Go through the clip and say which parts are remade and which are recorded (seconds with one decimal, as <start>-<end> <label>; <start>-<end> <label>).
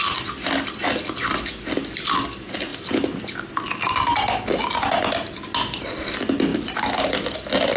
0.0-7.8 recorded